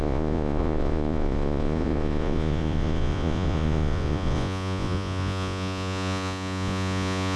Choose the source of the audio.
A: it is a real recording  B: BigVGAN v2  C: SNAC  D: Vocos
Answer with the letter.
D